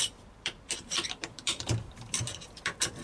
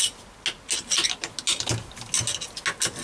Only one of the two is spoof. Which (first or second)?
first